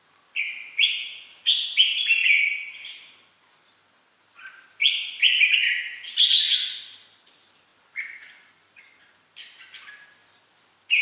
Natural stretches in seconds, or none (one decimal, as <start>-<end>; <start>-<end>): 2.2-4.5; 5.6-6.4